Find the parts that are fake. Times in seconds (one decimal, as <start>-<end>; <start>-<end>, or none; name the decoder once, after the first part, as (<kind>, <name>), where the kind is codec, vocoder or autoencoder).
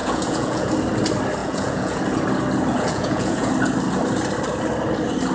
0.0-0.7 (vocoder, Vocos); 1.4-2.0; 2.7-3.5